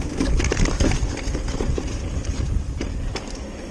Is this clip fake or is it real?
real